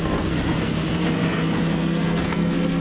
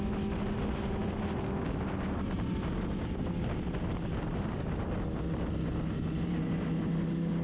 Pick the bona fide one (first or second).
second